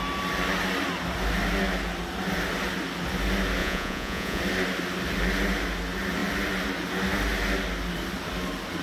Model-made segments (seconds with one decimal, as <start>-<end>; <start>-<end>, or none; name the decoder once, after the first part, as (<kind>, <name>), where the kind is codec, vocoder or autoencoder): 3.6-4.4 (vocoder, Vocos)